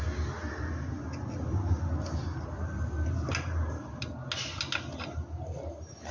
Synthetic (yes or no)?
no